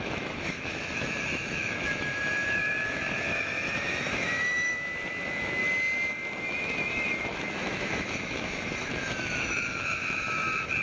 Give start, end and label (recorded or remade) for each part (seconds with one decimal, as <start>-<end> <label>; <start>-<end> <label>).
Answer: 0.0-5.6 remade; 5.6-6.4 recorded; 6.4-10.8 remade